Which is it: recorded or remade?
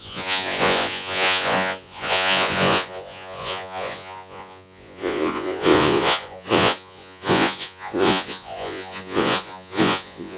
remade